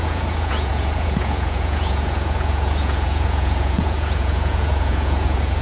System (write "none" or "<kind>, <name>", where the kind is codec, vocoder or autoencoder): vocoder, Vocos